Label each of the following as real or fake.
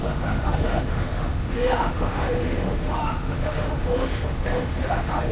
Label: fake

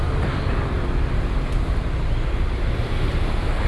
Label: real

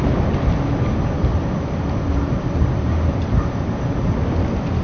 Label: real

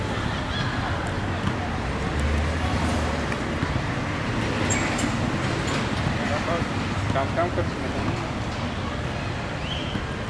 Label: real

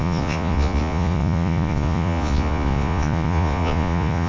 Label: fake